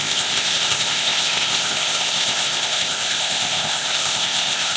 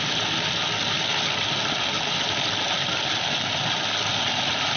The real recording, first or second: second